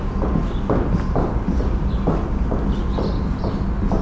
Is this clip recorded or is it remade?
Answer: recorded